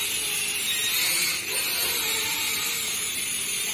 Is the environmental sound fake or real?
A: fake